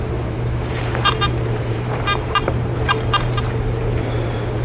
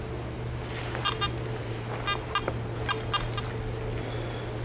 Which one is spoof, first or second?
first